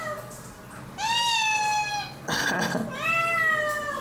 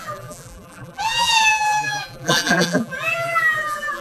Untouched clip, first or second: first